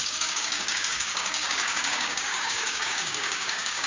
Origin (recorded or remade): remade